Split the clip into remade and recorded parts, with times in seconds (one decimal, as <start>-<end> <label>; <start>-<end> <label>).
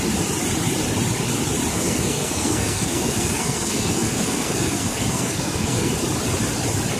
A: 0.0-1.7 recorded; 1.7-5.9 remade; 5.9-7.0 recorded